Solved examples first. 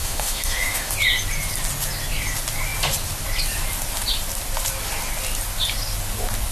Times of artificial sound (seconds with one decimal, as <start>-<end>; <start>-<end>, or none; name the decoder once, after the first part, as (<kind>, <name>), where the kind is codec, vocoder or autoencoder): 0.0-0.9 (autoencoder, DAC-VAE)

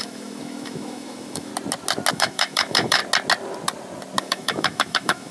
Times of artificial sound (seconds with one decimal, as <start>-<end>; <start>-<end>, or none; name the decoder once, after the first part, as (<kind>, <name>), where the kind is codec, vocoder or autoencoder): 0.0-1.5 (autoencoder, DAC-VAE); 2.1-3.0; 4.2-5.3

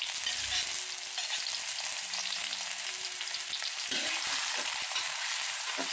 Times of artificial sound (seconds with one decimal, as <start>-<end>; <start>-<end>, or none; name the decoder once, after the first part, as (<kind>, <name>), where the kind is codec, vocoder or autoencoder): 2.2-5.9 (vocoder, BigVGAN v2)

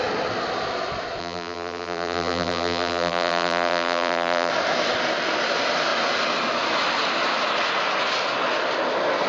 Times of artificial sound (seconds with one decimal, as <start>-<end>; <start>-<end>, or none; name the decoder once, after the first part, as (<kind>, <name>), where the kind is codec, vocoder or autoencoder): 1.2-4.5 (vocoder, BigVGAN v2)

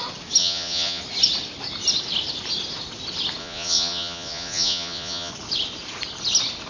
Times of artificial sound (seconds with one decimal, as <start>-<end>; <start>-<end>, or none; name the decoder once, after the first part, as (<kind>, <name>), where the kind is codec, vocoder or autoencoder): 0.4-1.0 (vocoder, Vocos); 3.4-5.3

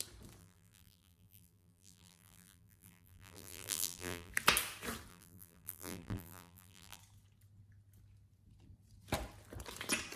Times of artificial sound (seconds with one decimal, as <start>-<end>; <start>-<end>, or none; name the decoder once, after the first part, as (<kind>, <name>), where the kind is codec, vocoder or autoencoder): 0.4-4.3 (vocoder, BigVGAN v2); 5.1-7.0

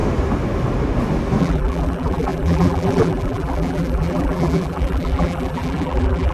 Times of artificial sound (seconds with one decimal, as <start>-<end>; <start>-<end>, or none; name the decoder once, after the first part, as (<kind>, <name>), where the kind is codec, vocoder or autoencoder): 1.4-6.3 (vocoder, BigVGAN v2)